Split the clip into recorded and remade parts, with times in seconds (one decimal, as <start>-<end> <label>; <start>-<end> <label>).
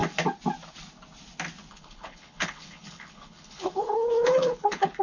0.0-1.7 recorded; 1.7-5.0 remade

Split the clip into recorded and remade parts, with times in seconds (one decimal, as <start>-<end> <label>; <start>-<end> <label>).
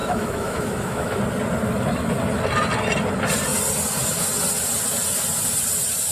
0.0-1.2 remade; 1.2-6.1 recorded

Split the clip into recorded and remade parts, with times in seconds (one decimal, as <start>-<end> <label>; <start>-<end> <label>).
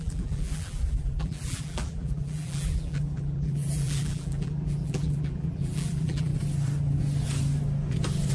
0.0-6.3 remade; 6.3-8.3 recorded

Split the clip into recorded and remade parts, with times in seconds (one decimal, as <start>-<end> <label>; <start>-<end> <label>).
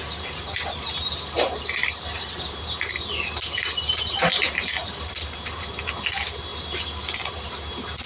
0.0-6.5 remade; 6.5-7.3 recorded; 7.3-8.1 remade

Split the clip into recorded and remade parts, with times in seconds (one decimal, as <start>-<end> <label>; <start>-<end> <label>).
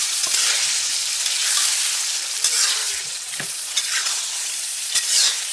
0.0-0.9 remade; 0.9-3.0 recorded; 3.0-5.5 remade